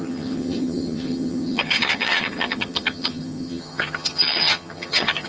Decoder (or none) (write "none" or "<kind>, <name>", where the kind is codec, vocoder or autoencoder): vocoder, HiFi-GAN